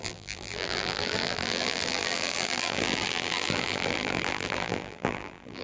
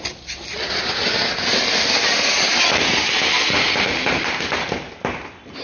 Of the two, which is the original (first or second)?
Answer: second